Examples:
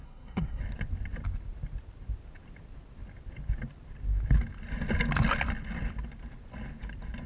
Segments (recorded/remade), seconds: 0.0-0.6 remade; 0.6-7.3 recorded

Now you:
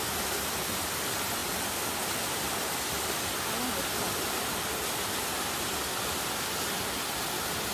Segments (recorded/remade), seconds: 0.0-7.7 recorded

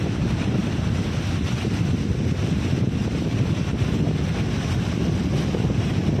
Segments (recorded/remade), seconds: 0.0-6.2 recorded